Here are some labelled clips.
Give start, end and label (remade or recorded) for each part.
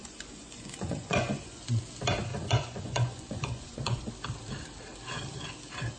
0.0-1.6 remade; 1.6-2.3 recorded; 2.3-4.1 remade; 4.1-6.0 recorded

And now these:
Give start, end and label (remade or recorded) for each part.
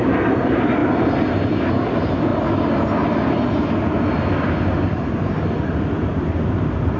0.0-0.8 remade; 0.8-1.9 recorded; 1.9-2.3 remade; 2.3-6.5 recorded; 6.5-7.0 remade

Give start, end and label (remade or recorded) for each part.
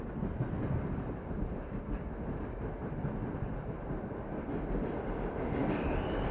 0.0-6.3 recorded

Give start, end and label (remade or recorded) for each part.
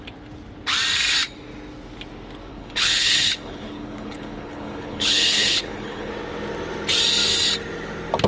0.0-2.5 recorded; 2.5-6.1 remade; 6.1-8.3 recorded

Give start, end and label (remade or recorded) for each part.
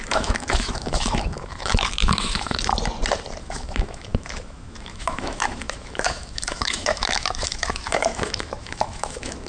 0.0-2.7 remade; 2.7-3.4 recorded; 3.4-9.5 remade